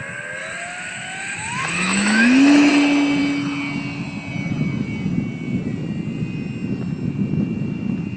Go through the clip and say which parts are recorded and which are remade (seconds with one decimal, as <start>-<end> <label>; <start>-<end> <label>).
0.0-0.4 recorded; 0.4-2.7 remade; 2.7-8.2 recorded